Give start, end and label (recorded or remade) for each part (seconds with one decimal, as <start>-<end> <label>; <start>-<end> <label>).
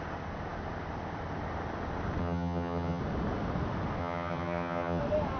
0.0-2.2 recorded; 2.2-3.0 remade; 3.0-4.0 recorded; 4.0-5.0 remade; 5.0-5.4 recorded